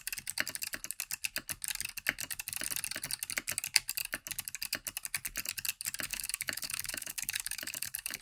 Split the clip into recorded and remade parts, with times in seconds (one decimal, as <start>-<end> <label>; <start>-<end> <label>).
0.0-6.1 recorded; 6.1-8.2 remade